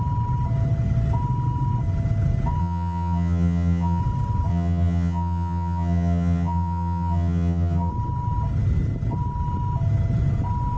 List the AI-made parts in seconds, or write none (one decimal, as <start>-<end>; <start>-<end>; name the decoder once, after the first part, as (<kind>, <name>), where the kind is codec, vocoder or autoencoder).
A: 2.6-4.0 (vocoder, HiFi-GAN); 4.5-7.9